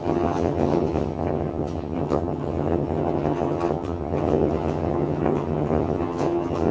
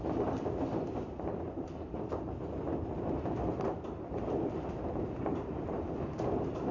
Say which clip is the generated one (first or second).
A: first